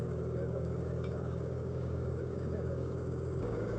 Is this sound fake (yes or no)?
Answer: yes